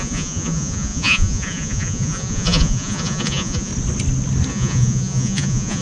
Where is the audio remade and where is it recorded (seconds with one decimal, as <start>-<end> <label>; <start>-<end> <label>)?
0.0-3.7 remade; 3.7-4.5 recorded; 4.5-5.8 remade